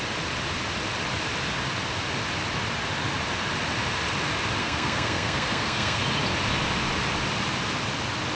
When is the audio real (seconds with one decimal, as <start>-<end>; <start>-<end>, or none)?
0.0-4.6; 6.0-8.3